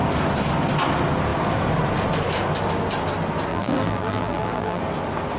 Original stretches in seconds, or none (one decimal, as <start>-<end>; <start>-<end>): 0.0-3.5; 4.8-5.4